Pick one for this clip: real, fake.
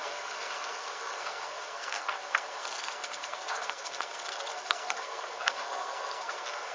fake